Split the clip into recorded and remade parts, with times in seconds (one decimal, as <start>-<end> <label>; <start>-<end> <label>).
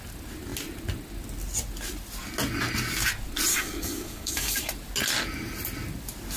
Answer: 0.0-3.5 recorded; 3.5-4.7 remade; 4.7-6.4 recorded